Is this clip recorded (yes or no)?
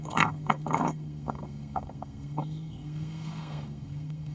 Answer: no